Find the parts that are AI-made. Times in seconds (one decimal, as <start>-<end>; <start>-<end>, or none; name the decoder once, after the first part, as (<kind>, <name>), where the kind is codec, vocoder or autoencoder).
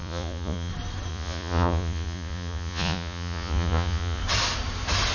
0.0-0.7 (vocoder, Vocos); 1.1-4.2